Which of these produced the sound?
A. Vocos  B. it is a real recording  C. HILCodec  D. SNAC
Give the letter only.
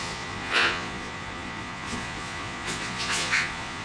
A